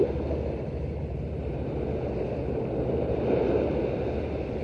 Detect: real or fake real